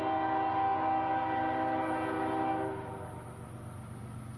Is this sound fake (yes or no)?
no